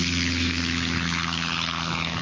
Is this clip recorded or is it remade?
remade